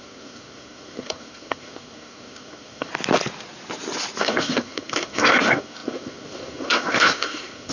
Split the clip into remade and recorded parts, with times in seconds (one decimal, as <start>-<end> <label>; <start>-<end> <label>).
0.0-2.9 remade; 2.9-4.2 recorded; 4.2-7.7 remade